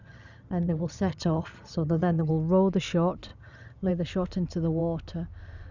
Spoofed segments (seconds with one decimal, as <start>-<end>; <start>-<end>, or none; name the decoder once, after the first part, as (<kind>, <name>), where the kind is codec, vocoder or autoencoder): 0.0-2.3 (vocoder, HiFi-GAN); 3.3-3.9